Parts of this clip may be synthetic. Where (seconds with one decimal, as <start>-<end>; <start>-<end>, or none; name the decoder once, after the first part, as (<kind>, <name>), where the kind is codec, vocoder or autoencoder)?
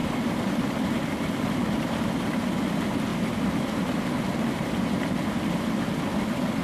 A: none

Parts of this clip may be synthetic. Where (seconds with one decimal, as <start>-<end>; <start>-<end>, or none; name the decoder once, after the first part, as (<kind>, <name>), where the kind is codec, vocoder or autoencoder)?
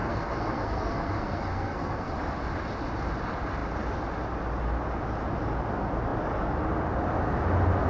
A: 0.0-2.1 (codec, SNAC)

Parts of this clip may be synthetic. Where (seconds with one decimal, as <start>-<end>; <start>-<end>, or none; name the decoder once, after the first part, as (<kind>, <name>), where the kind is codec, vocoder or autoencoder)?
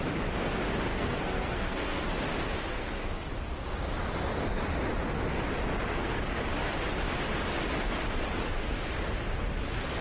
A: 0.9-2.0 (codec, SNAC); 2.7-3.3; 5.9-6.5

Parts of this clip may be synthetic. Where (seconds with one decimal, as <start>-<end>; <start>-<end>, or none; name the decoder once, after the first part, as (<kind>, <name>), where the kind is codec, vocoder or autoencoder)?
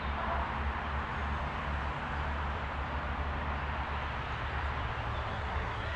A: 5.3-6.0 (codec, SNAC)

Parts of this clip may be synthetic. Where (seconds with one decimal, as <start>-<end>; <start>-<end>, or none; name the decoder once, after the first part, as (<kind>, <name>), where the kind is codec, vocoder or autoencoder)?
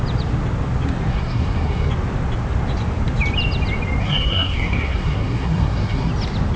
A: 1.1-1.9 (codec, SNAC); 4.0-6.1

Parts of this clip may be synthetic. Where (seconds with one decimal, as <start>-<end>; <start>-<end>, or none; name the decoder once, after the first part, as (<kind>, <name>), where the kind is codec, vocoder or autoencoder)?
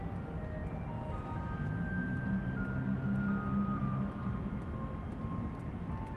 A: none